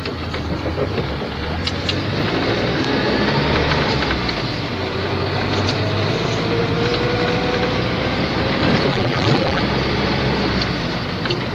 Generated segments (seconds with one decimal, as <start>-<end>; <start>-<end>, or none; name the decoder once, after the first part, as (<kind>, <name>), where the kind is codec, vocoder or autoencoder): 8.9-9.6 (vocoder, BigVGAN v2)